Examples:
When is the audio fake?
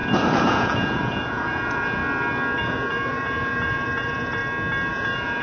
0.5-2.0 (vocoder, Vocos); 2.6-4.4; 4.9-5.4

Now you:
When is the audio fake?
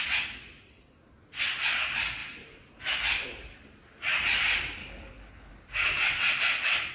4.8-5.5 (codec, HILCodec)